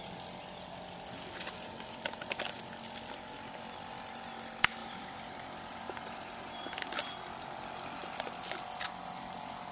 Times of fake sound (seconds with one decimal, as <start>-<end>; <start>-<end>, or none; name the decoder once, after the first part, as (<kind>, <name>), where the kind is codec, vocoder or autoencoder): 4.8-7.0 (vocoder, BigVGAN v2)